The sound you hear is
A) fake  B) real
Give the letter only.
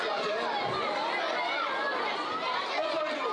B